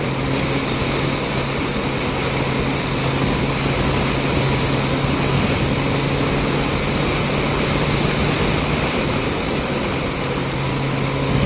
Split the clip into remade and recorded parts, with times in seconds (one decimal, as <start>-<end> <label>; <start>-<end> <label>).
0.0-11.5 recorded